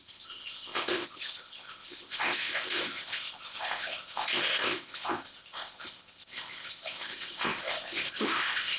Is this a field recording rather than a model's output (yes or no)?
no